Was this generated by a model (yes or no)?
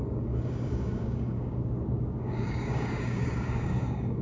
yes